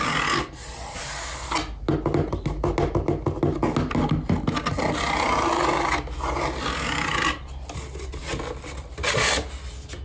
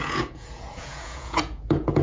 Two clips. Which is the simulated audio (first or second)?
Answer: second